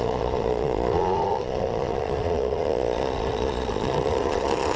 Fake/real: fake